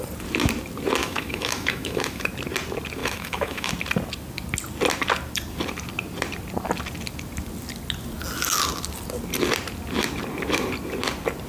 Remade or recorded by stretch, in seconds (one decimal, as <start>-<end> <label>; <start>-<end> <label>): 0.0-1.0 recorded; 1.0-2.3 remade; 2.3-3.0 recorded; 3.0-3.7 remade; 3.7-11.5 recorded